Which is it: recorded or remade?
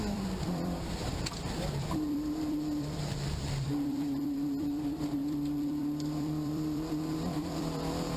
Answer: remade